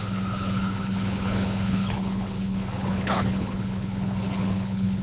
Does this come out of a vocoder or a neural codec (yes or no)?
yes